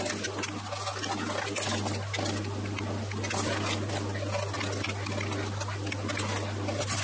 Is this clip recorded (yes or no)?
yes